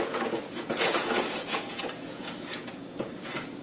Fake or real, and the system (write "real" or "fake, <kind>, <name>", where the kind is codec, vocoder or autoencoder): fake, vocoder, Vocos